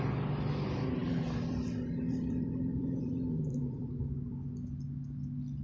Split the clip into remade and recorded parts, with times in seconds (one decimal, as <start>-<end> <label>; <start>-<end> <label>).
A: 0.0-1.0 recorded; 1.0-3.9 remade; 3.9-5.6 recorded